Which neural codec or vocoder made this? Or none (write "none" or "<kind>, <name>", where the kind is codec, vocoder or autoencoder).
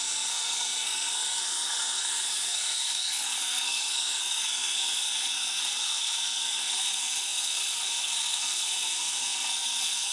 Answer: codec, SNAC